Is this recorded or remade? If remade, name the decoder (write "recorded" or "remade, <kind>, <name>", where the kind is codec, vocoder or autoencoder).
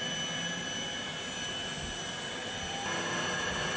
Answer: recorded